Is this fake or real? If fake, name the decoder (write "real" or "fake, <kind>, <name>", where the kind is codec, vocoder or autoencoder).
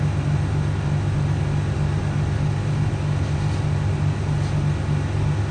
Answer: real